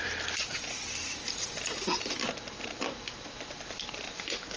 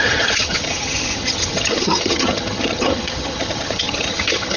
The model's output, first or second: second